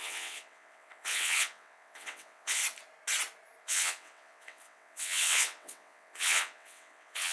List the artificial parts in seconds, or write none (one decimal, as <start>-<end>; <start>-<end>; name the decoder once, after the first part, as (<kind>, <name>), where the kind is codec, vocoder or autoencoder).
0.0-2.6 (vocoder, WaveNeXt); 3.6-7.3